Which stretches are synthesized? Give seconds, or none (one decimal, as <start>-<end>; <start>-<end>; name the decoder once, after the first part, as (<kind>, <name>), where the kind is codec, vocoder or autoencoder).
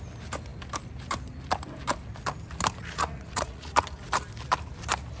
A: 2.8-3.7 (vocoder, Vocos)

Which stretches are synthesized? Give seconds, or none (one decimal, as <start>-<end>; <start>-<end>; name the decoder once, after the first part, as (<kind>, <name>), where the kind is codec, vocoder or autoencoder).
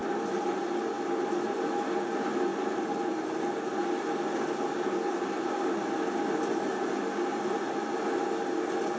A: none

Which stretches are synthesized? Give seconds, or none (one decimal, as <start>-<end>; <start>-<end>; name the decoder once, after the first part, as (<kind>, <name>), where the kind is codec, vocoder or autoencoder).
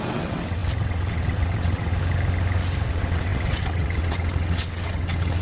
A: 0.0-1.9 (vocoder, WaveNeXt); 2.8-5.4